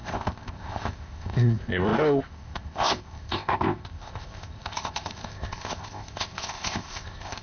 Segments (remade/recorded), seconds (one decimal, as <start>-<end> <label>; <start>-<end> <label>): 0.0-7.4 remade